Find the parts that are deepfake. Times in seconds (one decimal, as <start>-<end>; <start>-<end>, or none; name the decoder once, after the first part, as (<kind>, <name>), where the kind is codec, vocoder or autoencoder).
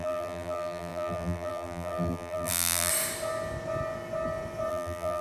0.0-2.9 (vocoder, BigVGAN v2); 4.7-5.2